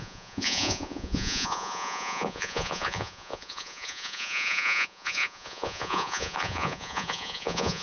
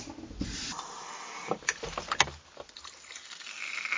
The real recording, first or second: second